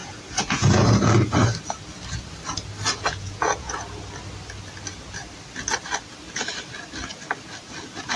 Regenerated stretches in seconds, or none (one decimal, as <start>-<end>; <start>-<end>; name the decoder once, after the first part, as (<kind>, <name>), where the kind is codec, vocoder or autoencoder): 0.0-0.8 (vocoder, Vocos); 2.9-3.7